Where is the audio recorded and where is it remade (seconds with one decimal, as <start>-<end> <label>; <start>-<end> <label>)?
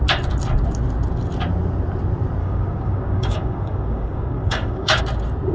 0.0-2.4 recorded; 2.4-5.0 remade; 5.0-5.5 recorded